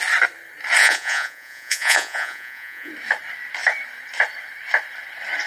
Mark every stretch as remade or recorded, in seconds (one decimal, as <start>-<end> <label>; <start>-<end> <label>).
0.0-0.8 recorded; 0.8-2.9 remade; 2.9-5.5 recorded